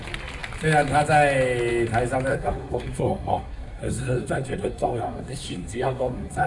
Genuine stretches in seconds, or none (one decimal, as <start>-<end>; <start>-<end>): 0.0-2.3